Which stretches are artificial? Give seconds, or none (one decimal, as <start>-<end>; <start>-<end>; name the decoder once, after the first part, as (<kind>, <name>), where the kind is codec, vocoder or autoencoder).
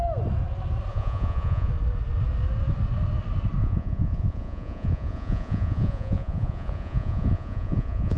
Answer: 0.9-1.7 (vocoder, Vocos); 3.6-8.2